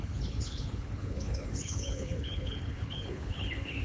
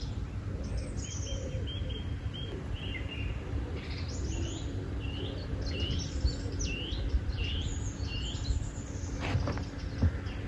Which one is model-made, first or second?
first